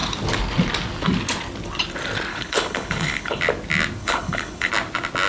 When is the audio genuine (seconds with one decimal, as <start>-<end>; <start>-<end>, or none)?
0.0-2.3; 3.4-4.0; 4.7-5.3